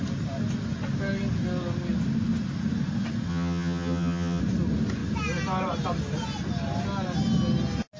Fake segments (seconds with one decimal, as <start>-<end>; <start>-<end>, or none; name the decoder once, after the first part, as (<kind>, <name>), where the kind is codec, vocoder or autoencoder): 3.3-4.4 (vocoder, HiFi-GAN)